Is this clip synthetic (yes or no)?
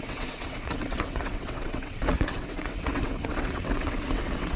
yes